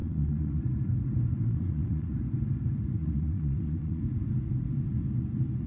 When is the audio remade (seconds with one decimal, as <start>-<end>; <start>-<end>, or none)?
0.0-0.6; 1.4-2.1; 3.0-4.0